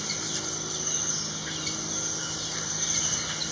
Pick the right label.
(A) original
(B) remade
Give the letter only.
A